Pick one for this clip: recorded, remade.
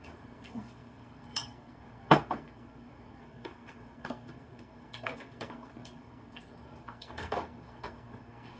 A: remade